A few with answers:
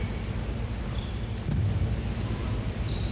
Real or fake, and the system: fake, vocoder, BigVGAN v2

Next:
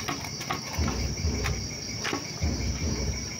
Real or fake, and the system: real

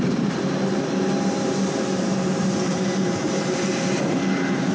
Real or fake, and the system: fake, vocoder, BigVGAN v2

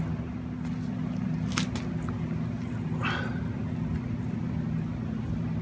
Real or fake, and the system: real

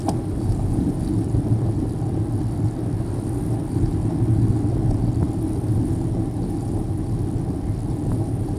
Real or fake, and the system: real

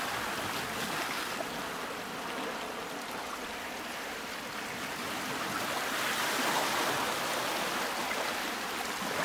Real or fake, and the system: real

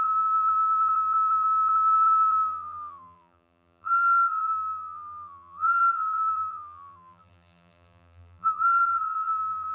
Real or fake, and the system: fake, vocoder, BigVGAN v2